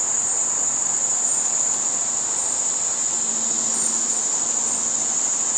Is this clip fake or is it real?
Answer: real